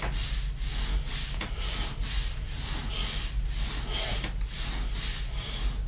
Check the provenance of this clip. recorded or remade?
recorded